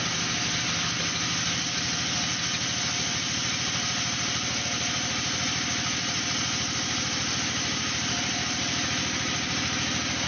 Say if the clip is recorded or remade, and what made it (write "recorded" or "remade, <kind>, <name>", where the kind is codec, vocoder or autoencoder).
recorded